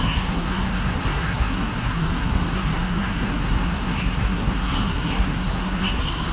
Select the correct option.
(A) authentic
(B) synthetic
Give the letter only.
B